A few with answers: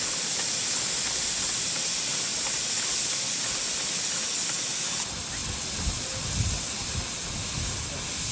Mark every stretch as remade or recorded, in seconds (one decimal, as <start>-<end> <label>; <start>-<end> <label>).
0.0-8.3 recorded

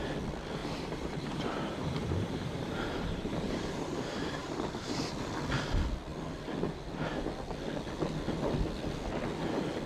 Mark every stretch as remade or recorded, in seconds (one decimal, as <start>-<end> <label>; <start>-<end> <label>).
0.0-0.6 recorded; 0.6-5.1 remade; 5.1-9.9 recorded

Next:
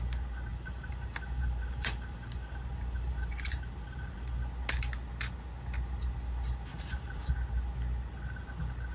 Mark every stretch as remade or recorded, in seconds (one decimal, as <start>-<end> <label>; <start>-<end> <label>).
0.0-0.5 recorded; 0.5-4.3 remade; 4.3-6.7 recorded; 6.7-7.3 remade; 7.3-8.9 recorded